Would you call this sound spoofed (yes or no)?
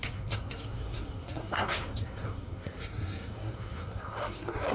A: yes